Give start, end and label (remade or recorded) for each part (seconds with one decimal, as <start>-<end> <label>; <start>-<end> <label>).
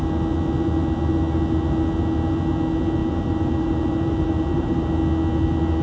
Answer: 0.0-3.0 recorded; 3.0-4.9 remade; 4.9-5.8 recorded